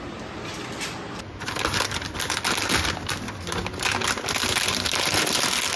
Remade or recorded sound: recorded